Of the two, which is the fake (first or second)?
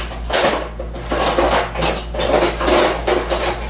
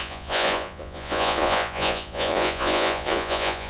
second